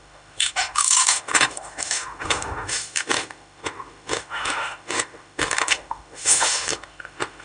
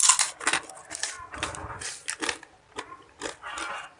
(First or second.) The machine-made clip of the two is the first